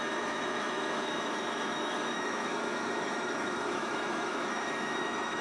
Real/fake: fake